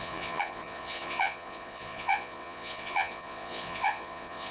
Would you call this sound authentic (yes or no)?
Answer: no